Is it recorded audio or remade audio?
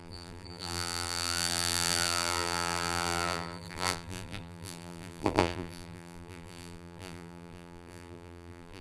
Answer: remade